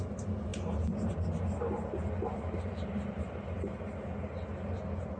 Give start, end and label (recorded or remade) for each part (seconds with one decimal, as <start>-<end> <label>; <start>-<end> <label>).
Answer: 0.0-5.2 recorded